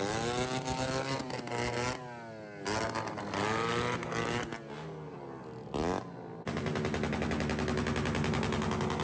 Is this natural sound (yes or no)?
yes